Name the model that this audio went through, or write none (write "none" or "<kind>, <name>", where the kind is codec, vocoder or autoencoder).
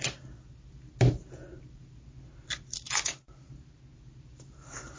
none